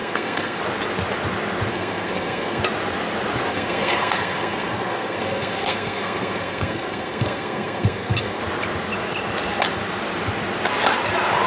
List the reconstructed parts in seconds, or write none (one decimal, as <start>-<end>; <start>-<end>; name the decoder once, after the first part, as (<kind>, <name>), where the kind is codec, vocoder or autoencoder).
0.0-0.6 (codec, SNAC); 1.7-2.6; 3.5-8.4